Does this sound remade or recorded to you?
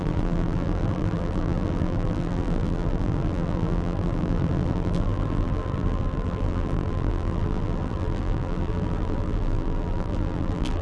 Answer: remade